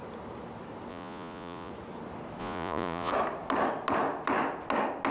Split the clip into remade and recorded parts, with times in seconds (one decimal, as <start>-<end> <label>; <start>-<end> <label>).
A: 0.0-0.9 recorded; 0.9-1.7 remade; 1.7-2.4 recorded; 2.4-3.1 remade; 3.1-5.1 recorded